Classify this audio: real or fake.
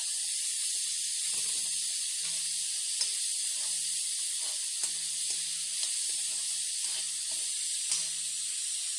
real